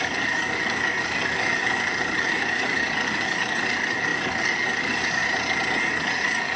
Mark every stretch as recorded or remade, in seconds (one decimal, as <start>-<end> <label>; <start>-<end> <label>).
0.0-5.2 remade; 5.2-5.8 recorded; 5.8-6.6 remade